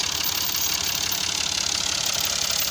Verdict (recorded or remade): recorded